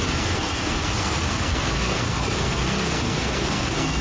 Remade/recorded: remade